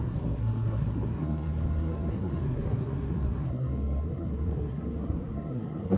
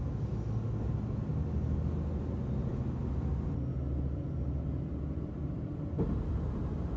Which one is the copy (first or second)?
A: first